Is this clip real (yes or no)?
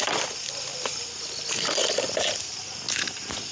yes